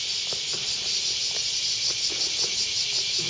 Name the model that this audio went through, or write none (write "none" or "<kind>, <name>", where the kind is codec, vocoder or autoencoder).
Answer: none